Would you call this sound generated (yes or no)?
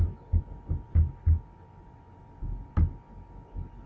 no